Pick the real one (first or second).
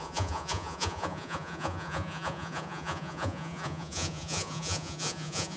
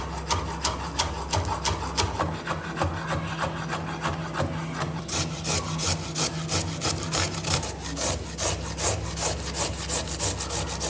second